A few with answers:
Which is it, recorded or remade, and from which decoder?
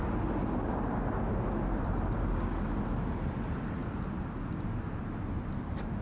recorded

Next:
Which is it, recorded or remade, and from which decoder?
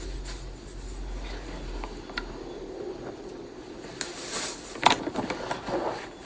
recorded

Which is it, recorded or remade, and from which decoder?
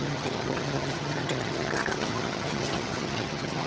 remade, vocoder, HiFi-GAN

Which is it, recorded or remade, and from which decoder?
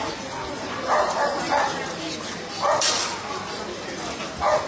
recorded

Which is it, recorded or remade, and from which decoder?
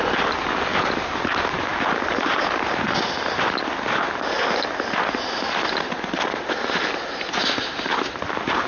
recorded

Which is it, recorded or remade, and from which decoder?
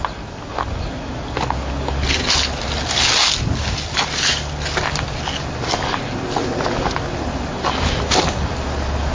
recorded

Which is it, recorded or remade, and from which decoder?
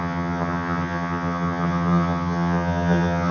remade, vocoder, HiFi-GAN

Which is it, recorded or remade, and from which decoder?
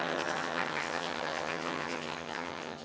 remade, vocoder, HiFi-GAN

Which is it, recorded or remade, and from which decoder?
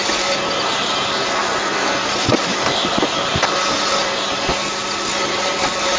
recorded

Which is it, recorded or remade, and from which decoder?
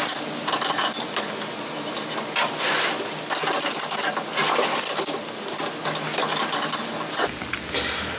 recorded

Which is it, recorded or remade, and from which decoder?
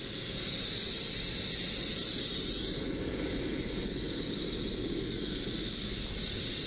recorded